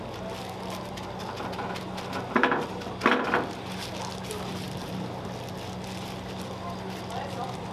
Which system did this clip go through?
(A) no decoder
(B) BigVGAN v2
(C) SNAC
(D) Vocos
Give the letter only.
A